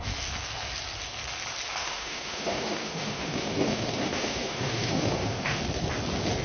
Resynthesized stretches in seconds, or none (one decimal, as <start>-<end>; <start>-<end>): 1.8-5.6